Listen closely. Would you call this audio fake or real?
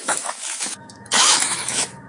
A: fake